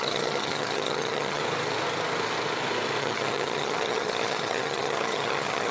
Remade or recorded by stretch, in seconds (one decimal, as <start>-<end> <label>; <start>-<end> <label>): 0.0-1.4 remade; 1.4-3.0 recorded; 3.0-5.7 remade